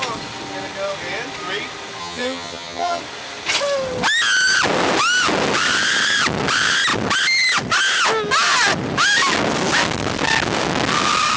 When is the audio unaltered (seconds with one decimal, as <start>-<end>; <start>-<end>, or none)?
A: 0.0-2.0; 3.0-11.4